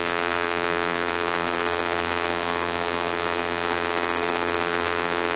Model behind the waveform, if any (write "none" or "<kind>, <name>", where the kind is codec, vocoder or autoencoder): vocoder, BigVGAN v2